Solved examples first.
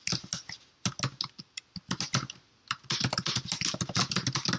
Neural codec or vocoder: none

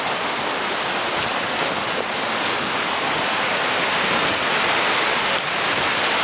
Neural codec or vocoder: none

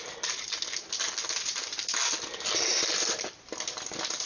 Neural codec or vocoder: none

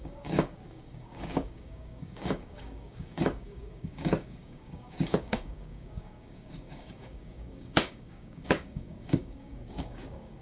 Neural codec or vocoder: codec, DAC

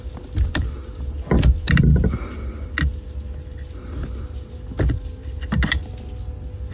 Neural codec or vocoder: none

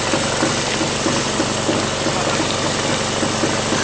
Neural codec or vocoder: none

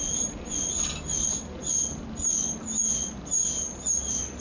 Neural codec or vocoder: none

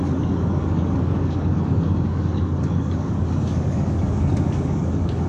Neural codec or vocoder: codec, DAC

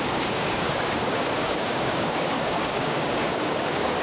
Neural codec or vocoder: codec, DAC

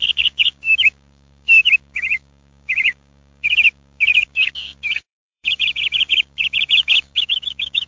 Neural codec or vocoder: codec, DAC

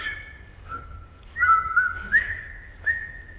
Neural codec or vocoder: codec, DAC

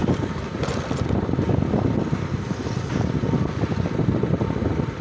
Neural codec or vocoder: none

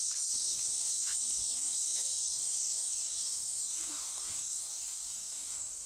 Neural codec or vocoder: codec, DAC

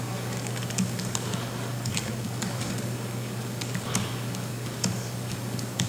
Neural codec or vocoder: codec, DAC